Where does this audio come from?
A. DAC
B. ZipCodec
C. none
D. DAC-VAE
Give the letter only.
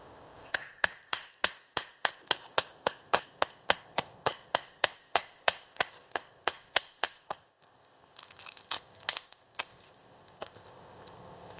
B